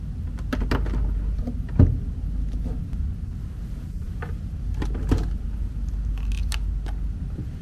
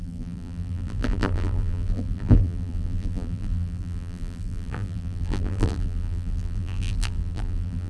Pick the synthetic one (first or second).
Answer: second